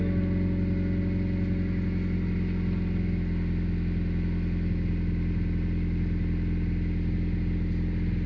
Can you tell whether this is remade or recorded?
recorded